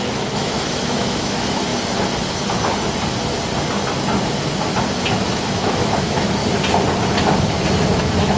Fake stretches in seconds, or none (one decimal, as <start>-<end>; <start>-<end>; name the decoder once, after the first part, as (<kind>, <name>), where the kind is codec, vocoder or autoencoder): 0.0-1.7 (autoencoder, DAC-VAE); 5.1-6.4; 7.8-8.4